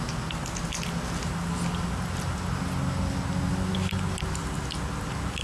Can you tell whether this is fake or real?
real